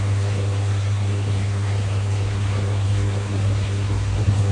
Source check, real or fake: fake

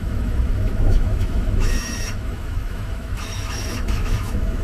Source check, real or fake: fake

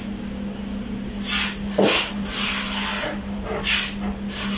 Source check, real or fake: real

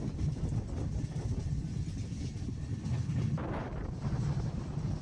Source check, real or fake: real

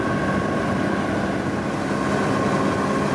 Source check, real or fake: real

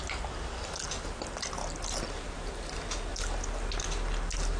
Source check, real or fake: real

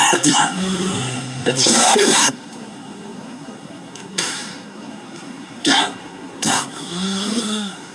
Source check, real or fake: fake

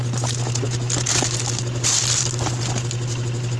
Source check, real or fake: real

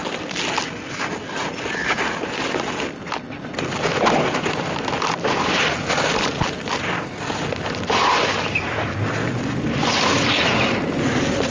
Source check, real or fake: real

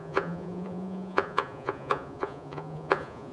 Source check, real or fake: fake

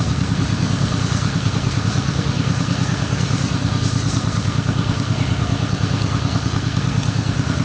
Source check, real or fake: fake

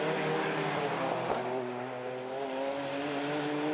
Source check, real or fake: real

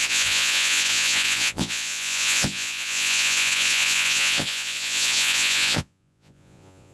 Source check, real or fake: fake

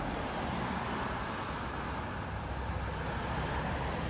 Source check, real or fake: real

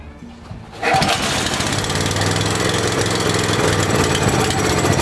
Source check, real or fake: real